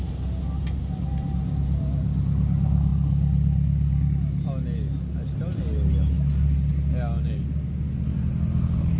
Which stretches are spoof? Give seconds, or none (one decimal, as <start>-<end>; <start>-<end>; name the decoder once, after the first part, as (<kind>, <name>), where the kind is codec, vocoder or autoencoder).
none

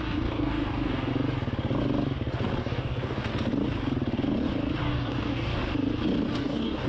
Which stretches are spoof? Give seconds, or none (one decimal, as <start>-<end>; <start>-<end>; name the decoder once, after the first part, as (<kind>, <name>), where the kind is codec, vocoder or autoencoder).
0.0-1.1 (codec, DAC); 2.6-3.3; 4.8-5.6; 6.3-6.9

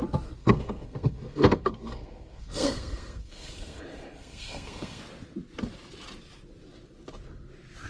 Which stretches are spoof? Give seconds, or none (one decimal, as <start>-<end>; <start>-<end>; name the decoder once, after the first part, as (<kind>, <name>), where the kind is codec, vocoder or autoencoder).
0.4-3.8 (codec, SNAC); 4.2-5.0